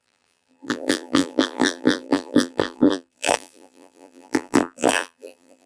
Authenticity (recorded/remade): remade